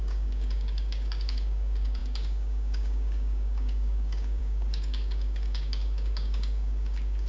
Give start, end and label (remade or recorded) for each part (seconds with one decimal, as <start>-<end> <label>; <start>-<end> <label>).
0.0-7.3 remade